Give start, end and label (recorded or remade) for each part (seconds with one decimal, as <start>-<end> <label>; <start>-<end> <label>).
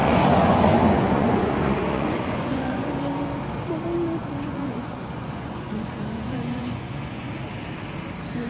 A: 0.0-2.9 remade; 2.9-4.2 recorded; 4.2-7.3 remade; 7.3-8.5 recorded